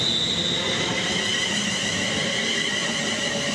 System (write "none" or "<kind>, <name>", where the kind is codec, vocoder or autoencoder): none